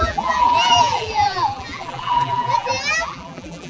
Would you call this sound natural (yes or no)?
no